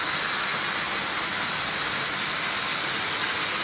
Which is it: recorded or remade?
recorded